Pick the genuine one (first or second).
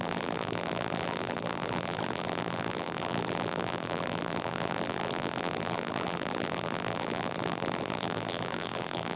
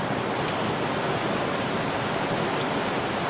second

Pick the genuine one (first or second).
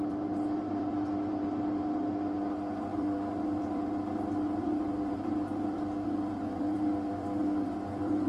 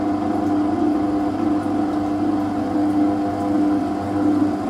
second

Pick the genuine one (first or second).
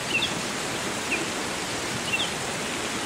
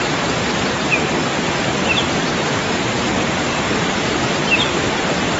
first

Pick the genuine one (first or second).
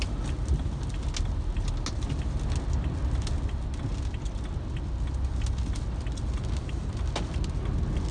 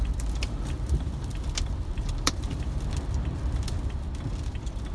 first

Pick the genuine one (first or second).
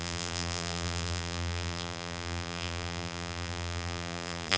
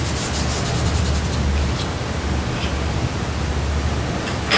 second